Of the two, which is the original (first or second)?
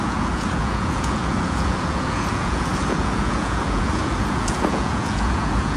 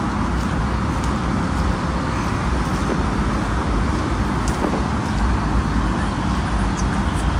second